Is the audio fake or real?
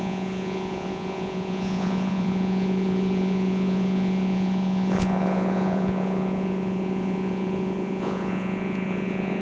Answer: fake